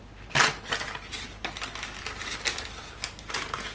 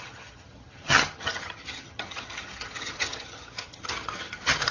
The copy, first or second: second